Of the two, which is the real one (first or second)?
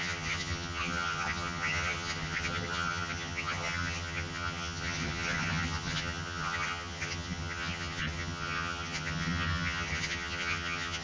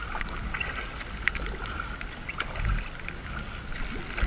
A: second